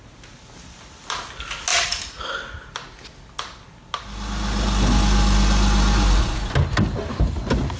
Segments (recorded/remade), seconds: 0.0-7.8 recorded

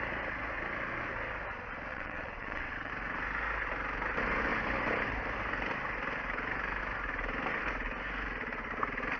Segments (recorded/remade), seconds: 0.0-1.9 recorded; 1.9-2.9 remade; 2.9-9.2 recorded

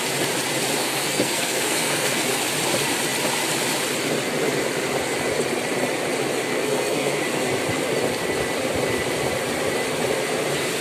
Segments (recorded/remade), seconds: 0.0-0.8 recorded; 0.8-2.4 remade; 2.4-6.5 recorded; 6.5-7.2 remade; 7.2-10.8 recorded

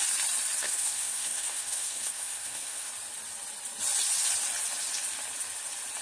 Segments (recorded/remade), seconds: 0.0-0.6 recorded; 0.6-2.9 remade; 2.9-6.0 recorded

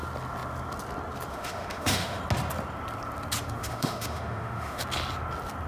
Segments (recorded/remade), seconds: 0.0-1.3 recorded; 1.3-2.2 remade; 2.2-3.6 recorded; 3.6-4.8 remade; 4.8-5.7 recorded

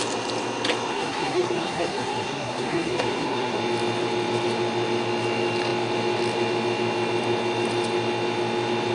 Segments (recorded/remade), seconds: 0.0-0.9 recorded; 0.9-3.6 remade; 3.6-8.9 recorded

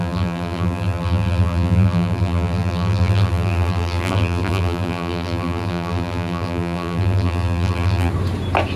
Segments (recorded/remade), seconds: 0.0-8.1 remade; 8.1-8.8 recorded